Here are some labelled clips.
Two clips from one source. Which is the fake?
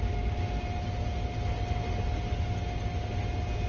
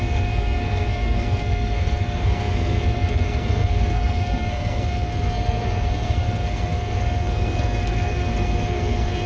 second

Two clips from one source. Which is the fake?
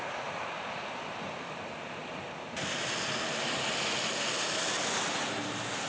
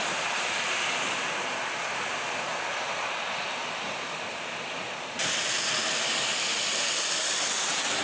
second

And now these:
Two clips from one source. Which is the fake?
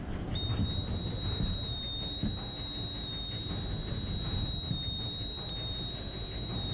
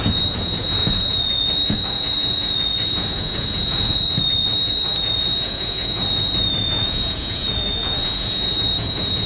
second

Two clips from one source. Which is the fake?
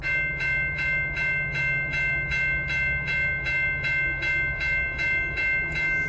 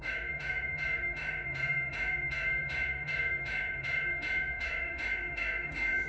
second